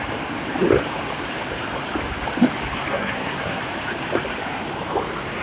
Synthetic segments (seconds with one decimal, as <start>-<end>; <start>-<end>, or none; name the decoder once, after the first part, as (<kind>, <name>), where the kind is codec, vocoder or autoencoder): 2.9-3.6 (codec, SNAC)